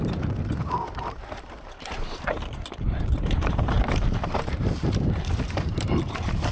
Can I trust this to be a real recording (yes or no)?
no